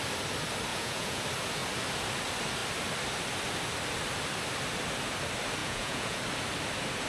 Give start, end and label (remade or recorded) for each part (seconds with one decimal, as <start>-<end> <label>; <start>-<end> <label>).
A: 0.0-0.7 recorded; 0.7-1.2 remade; 1.2-5.6 recorded; 5.6-6.2 remade; 6.2-7.1 recorded